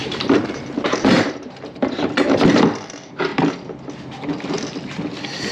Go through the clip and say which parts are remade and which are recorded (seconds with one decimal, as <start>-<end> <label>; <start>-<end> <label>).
0.0-2.5 remade; 2.5-5.5 recorded